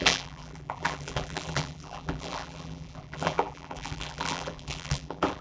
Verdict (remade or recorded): remade